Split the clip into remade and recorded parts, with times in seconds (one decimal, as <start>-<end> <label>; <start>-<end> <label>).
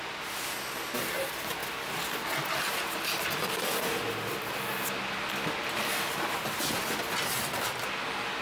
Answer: 0.0-8.4 recorded